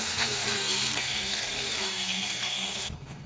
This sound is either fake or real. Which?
fake